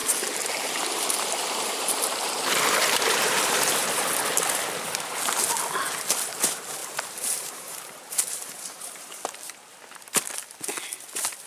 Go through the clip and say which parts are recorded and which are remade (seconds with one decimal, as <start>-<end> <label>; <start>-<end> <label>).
0.0-3.6 remade; 3.6-6.8 recorded; 6.8-9.2 remade; 9.2-11.5 recorded